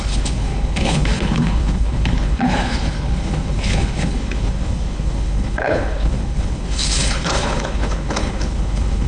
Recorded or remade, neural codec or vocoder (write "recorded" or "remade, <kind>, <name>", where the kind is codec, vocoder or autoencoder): remade, codec, HILCodec